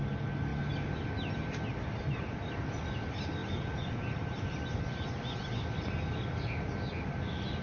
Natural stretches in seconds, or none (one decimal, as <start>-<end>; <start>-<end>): 0.0-3.4; 4.0-7.6